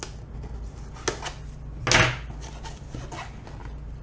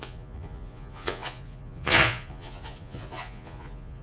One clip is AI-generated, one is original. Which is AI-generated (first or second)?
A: second